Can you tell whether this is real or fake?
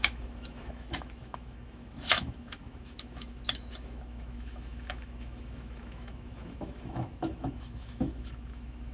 fake